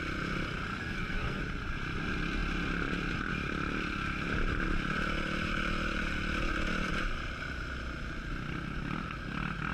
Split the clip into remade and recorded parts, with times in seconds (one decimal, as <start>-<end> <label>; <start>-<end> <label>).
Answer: 0.0-0.8 recorded; 0.8-1.4 remade; 1.4-9.7 recorded